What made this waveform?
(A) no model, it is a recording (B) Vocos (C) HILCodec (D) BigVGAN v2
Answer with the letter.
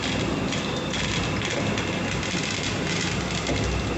A